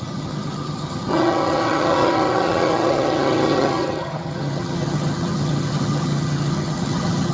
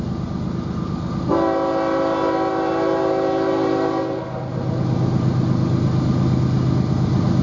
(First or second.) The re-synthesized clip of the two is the first